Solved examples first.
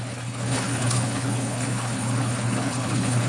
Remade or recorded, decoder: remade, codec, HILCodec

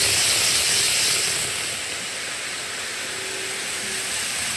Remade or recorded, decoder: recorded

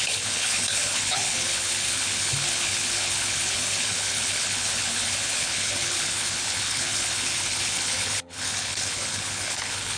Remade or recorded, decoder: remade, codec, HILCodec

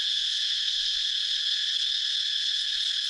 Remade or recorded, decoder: remade, codec, HILCodec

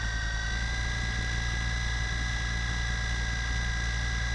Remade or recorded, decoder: recorded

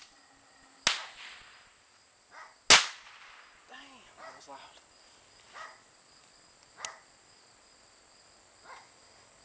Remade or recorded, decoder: recorded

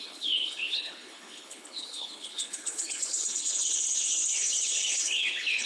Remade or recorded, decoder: remade, codec, HILCodec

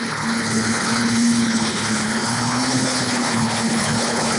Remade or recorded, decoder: remade, codec, HILCodec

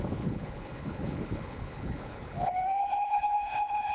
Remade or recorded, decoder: remade, codec, HILCodec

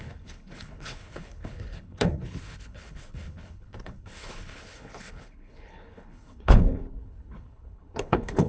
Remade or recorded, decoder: remade, codec, HILCodec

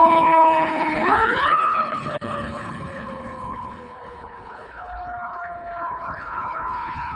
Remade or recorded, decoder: remade, codec, HILCodec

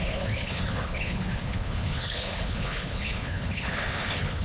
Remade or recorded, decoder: remade, codec, HILCodec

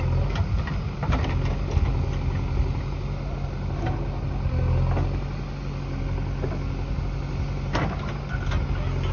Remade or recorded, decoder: recorded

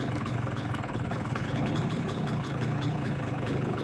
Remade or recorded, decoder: remade, codec, HILCodec